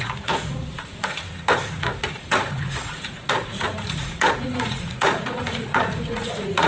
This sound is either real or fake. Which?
fake